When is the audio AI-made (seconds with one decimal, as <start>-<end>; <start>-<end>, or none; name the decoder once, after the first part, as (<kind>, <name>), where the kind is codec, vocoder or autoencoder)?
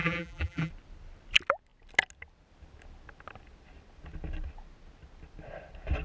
0.0-0.7 (vocoder, BigVGAN v2)